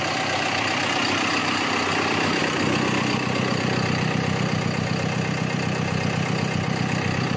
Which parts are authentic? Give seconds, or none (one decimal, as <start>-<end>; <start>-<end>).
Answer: 0.0-1.4; 2.4-7.4